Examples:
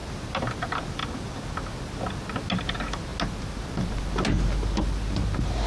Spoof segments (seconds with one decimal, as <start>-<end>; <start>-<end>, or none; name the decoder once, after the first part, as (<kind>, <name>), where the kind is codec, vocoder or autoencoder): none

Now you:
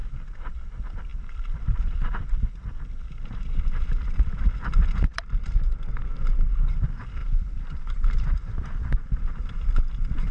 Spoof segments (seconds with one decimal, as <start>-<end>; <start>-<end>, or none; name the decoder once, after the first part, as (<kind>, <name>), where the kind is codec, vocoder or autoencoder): 5.1-5.6 (vocoder, BigVGAN v2); 7.2-9.1

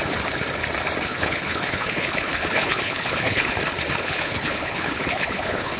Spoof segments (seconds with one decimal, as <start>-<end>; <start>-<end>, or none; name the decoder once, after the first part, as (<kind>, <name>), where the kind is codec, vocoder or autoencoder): 1.1-3.5 (codec, HILCodec); 4.0-5.8